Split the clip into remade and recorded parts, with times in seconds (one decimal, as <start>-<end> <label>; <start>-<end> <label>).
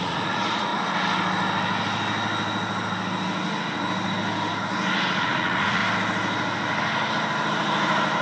0.0-0.7 remade; 0.7-5.2 recorded; 5.2-5.8 remade; 5.8-8.2 recorded